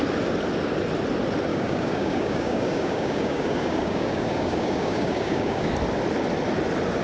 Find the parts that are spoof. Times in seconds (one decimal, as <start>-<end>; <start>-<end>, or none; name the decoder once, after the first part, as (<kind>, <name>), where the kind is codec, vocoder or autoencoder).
1.5-5.7 (codec, DAC)